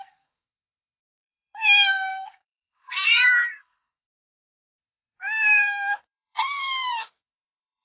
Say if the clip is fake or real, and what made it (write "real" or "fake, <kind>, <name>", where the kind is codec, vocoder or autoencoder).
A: fake, codec, SNAC